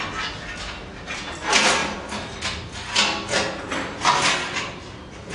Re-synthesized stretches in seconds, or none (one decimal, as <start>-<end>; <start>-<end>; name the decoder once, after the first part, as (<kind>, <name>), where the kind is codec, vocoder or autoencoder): none